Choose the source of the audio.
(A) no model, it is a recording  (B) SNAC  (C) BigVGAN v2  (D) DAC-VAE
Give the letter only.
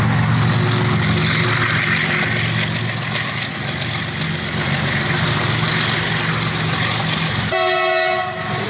A